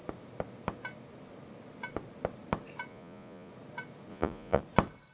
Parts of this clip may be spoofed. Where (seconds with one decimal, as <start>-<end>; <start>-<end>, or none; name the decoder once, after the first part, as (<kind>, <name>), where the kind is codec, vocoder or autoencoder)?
2.9-3.5 (vocoder, Vocos); 4.1-4.6